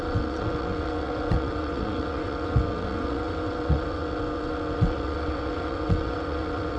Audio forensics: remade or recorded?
remade